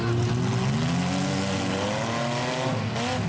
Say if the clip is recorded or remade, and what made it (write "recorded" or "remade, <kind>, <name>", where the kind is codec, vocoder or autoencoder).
recorded